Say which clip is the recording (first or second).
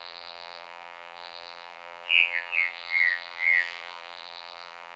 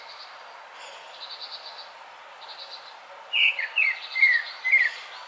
second